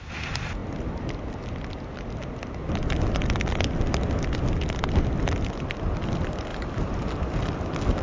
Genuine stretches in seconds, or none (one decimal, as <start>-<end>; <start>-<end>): 0.0-6.5; 7.3-8.0